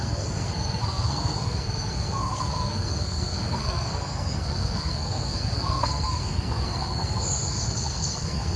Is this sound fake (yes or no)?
yes